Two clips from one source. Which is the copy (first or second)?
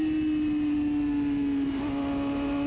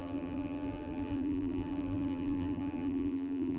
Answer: second